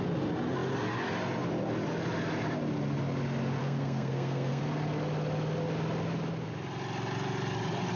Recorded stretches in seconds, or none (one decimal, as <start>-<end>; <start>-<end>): 0.0-3.6; 4.6-8.0